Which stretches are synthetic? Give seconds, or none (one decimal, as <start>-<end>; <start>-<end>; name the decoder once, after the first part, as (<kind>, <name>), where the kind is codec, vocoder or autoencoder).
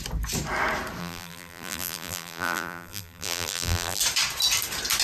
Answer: 1.0-4.0 (vocoder, BigVGAN v2)